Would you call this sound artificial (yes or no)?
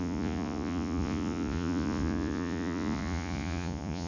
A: yes